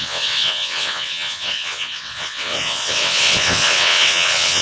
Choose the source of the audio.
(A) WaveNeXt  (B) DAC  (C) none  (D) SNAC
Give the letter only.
A